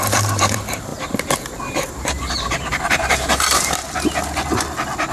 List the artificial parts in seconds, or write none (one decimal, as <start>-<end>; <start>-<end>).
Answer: 0.0-0.9; 1.9-3.8